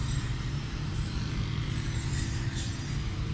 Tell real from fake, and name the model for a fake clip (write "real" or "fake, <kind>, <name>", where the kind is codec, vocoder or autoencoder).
real